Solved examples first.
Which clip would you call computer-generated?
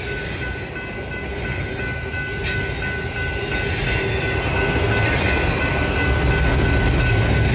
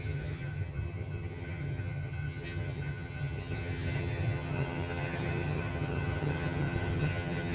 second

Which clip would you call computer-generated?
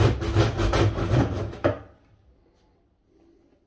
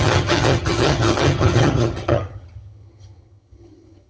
second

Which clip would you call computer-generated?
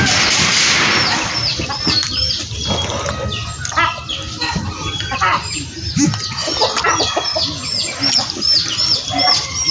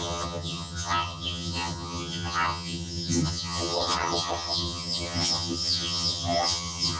second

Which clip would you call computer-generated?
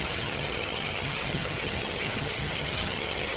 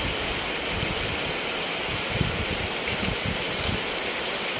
first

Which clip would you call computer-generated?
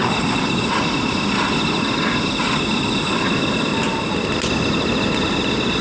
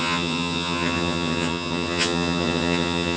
second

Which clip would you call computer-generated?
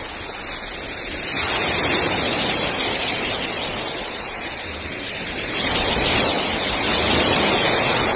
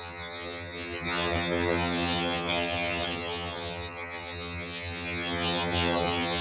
second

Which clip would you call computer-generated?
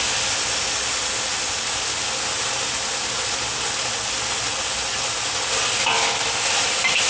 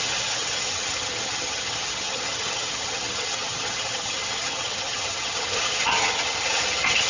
second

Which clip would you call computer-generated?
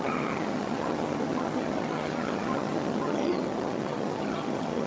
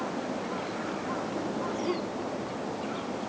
first